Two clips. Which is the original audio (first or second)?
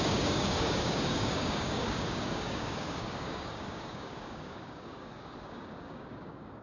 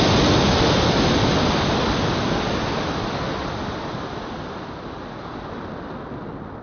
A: second